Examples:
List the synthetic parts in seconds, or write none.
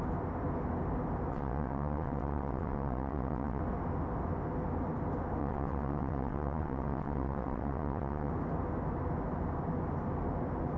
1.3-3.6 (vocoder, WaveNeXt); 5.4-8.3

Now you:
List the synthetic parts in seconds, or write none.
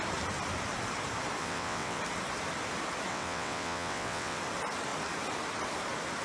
1.4-2.0 (vocoder, WaveNeXt); 3.1-4.4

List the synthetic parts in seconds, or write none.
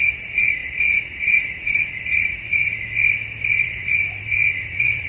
0.0-2.7 (vocoder, Vocos); 3.6-5.1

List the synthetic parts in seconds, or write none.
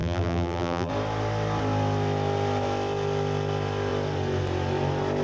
0.0-0.9 (vocoder, BigVGAN v2)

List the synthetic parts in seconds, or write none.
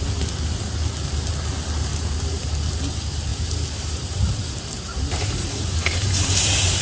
1.9-2.7 (vocoder, BigVGAN v2); 3.3-6.8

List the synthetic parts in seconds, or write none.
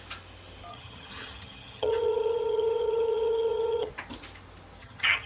0.7-3.9 (vocoder, HiFi-GAN); 4.8-5.3